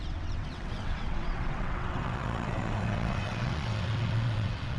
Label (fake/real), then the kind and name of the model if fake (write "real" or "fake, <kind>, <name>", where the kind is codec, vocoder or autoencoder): fake, vocoder, WaveNeXt